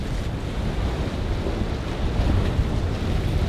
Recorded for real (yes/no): yes